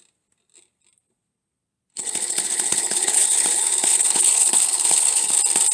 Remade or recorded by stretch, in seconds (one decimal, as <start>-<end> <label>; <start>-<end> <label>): 0.0-1.9 recorded; 1.9-5.3 remade; 5.3-5.7 recorded